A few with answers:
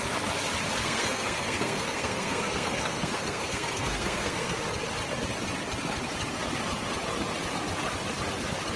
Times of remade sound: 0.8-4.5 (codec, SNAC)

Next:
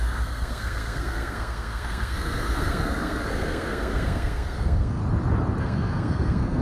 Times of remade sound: 0.0-5.0 (codec, SNAC); 5.6-6.6